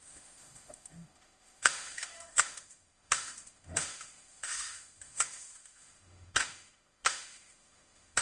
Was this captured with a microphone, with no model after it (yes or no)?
no